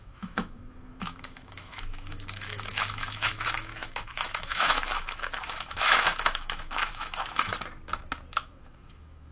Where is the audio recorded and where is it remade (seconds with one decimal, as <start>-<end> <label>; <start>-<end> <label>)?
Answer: 0.0-7.5 remade; 7.5-8.4 recorded; 8.4-9.3 remade